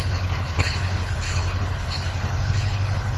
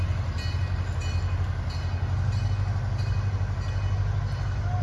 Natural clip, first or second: second